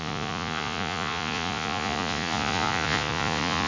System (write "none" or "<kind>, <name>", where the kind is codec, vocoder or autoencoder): vocoder, Vocos